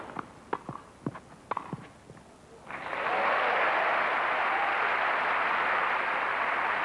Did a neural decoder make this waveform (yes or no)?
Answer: no